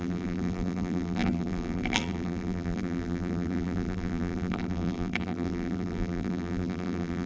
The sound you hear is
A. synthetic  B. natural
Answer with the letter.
A